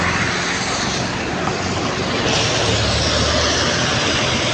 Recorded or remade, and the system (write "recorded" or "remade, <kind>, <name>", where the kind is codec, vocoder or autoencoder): recorded